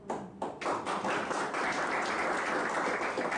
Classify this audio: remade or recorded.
remade